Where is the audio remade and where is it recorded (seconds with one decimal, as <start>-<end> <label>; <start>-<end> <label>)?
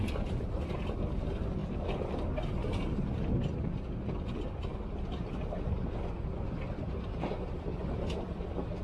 0.0-8.8 recorded